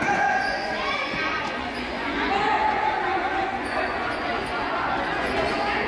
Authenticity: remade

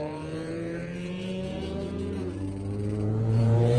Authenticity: remade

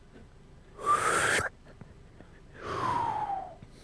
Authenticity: recorded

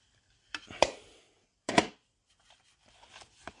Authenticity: recorded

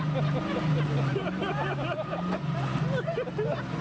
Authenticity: recorded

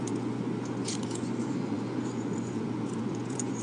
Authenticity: remade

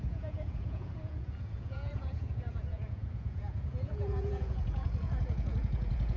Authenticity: remade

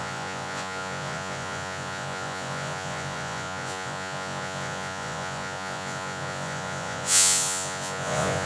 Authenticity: remade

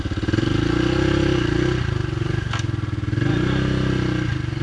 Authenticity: recorded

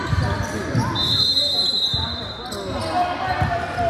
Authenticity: recorded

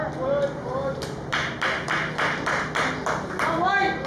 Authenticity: recorded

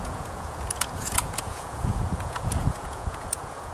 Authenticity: remade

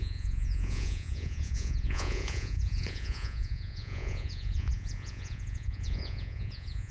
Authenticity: remade